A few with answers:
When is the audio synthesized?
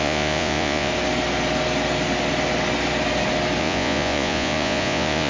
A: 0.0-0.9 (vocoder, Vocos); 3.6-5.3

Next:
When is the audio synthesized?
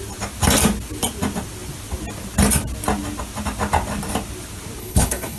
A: 4.8-5.4 (codec, HILCodec)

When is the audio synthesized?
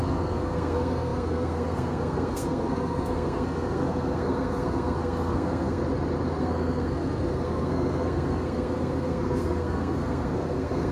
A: 0.0-5.8 (codec, SNAC); 6.4-10.9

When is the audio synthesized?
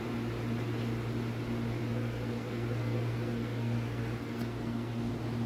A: 1.8-5.1 (codec, SNAC)